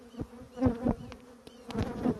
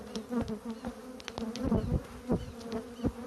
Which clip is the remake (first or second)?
first